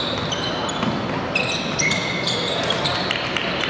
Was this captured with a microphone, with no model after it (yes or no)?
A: yes